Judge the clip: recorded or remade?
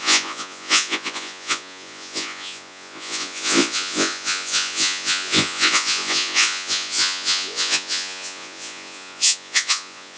remade